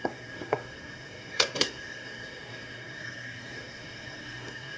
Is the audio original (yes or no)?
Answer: no